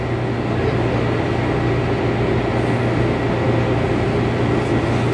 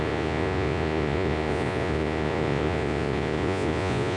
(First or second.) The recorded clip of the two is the first